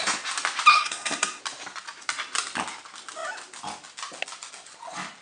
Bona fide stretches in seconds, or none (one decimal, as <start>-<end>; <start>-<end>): 0.0-0.7; 1.4-5.2